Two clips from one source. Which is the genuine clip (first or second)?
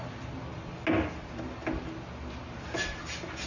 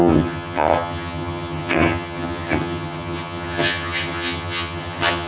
first